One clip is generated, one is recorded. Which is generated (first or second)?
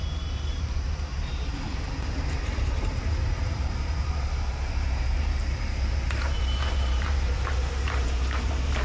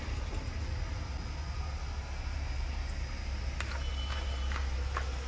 first